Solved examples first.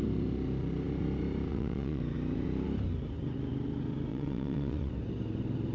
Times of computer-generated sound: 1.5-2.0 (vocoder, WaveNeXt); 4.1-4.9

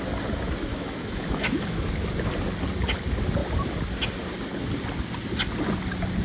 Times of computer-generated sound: 0.7-1.9 (autoencoder, DAC-VAE)

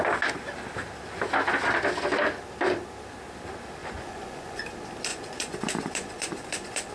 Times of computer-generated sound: 3.8-4.6 (vocoder, Vocos); 5.1-6.9

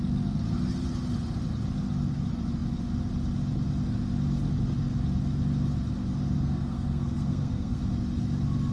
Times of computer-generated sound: 6.4-7.8 (codec, SNAC)

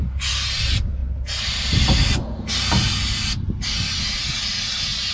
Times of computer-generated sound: none